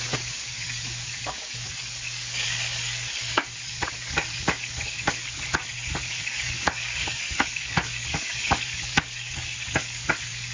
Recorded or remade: remade